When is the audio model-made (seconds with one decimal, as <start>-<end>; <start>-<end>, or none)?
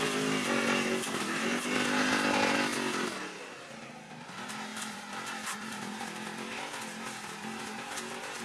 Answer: 2.7-3.4; 4.7-6.7